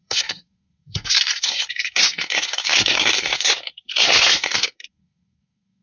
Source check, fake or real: fake